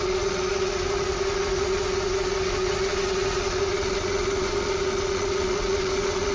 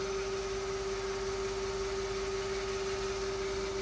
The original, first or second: second